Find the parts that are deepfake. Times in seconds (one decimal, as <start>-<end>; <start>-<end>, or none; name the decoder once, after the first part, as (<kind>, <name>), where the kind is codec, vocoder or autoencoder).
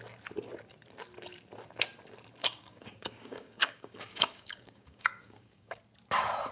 2.4-5.8 (codec, DAC)